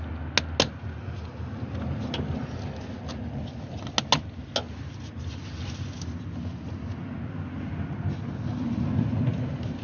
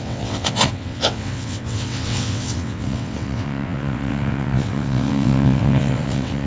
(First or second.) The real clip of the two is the first